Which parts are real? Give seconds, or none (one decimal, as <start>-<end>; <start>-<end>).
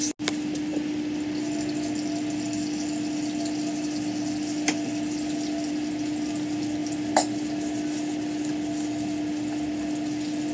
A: 0.0-10.5